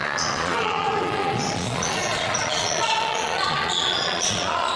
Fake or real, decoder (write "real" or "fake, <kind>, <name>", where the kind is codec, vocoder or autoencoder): fake, vocoder, Vocos